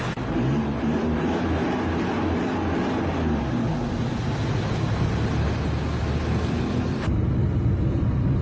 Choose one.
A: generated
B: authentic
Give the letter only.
B